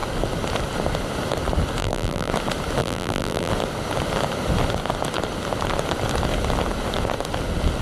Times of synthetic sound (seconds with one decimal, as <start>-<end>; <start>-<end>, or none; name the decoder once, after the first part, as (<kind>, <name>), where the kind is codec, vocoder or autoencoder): 1.8-2.3 (vocoder, BigVGAN v2); 2.8-3.5